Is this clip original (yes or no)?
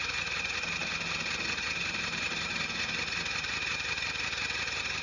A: yes